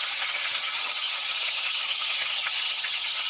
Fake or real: fake